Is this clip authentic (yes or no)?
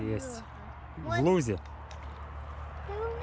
yes